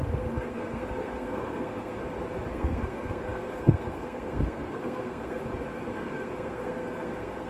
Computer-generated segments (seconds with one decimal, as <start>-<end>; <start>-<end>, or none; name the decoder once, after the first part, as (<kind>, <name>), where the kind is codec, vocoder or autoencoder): 0.0-2.0 (codec, SNAC); 2.5-5.4; 5.9-7.5